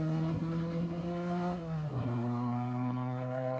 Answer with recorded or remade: remade